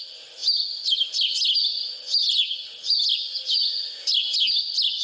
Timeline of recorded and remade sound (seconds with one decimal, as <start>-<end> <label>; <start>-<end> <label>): 0.0-5.0 recorded